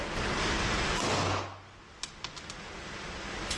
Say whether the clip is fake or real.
real